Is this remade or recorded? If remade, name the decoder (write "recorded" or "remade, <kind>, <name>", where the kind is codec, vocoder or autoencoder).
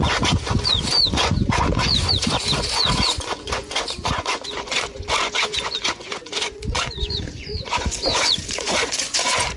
remade, vocoder, Vocos